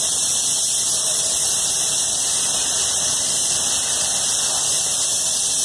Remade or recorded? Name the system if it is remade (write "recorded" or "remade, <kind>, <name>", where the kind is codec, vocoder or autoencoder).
recorded